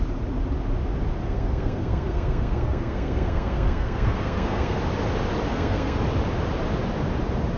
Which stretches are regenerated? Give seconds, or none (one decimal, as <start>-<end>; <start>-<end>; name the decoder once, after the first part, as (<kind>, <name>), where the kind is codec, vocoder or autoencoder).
1.2-4.8 (codec, SNAC); 5.5-6.0

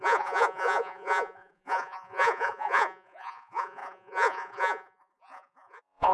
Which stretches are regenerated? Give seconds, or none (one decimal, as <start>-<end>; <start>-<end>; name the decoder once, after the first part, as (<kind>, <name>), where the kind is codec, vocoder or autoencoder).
0.0-6.1 (vocoder, Vocos)

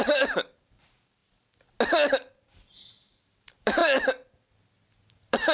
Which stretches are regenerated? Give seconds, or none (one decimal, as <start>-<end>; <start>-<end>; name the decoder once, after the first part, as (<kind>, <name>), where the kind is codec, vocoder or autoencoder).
0.0-1.2 (vocoder, BigVGAN v2); 2.1-3.8; 5.1-5.5